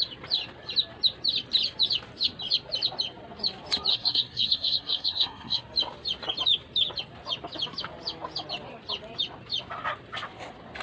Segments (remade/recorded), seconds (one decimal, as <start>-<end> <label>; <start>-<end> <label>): 0.0-3.9 recorded; 3.9-5.6 remade; 5.6-10.8 recorded